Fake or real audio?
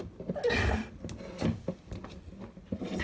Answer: real